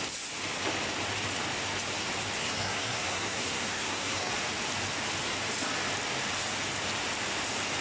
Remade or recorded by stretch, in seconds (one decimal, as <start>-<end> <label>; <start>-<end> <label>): 0.0-2.4 recorded; 2.4-4.3 remade; 4.3-7.8 recorded